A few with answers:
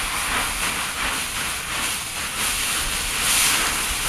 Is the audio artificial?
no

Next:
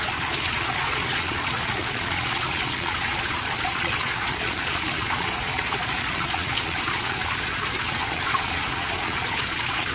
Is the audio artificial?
yes